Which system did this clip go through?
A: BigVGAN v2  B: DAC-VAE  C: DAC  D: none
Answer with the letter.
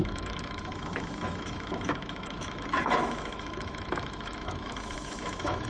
B